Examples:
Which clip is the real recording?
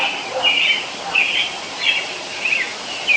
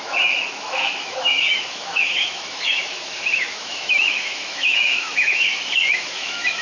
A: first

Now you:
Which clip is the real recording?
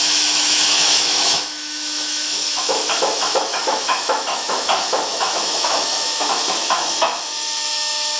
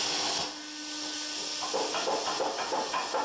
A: second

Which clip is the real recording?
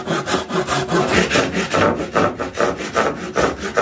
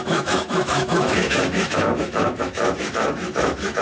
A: first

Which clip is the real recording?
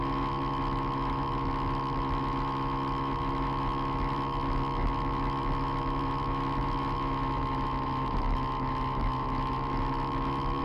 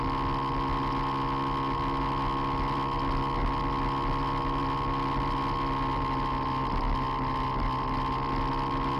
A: second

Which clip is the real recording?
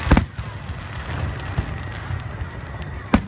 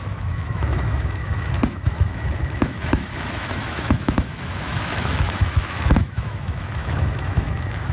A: first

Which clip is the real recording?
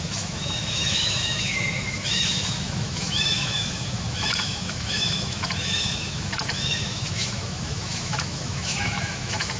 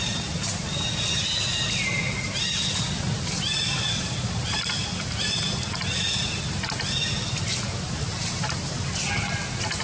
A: second